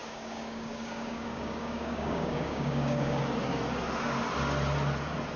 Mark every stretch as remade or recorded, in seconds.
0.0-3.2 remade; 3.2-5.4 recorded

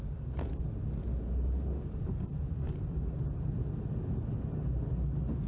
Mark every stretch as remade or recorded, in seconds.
0.0-5.5 recorded

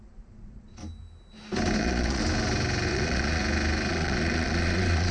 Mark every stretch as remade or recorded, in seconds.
0.0-0.8 remade; 0.8-1.8 recorded; 1.8-2.2 remade; 2.2-2.9 recorded; 2.9-3.4 remade; 3.4-3.9 recorded; 3.9-5.1 remade

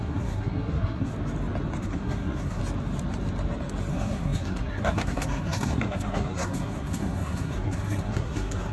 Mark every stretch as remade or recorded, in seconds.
0.0-1.1 remade; 1.1-1.8 recorded; 1.8-2.6 remade; 2.6-3.9 recorded; 3.9-8.7 remade

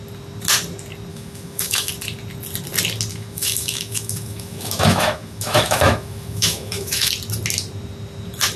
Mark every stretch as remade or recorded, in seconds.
0.0-1.1 recorded; 1.1-1.9 remade; 1.9-3.1 recorded; 3.1-7.1 remade; 7.1-8.6 recorded

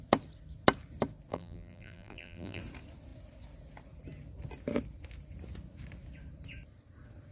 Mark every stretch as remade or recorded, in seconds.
0.0-1.3 recorded; 1.3-2.6 remade; 2.6-7.3 recorded

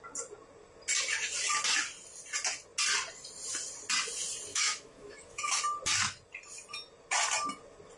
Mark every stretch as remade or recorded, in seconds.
0.0-4.5 recorded; 4.5-5.6 remade; 5.6-8.0 recorded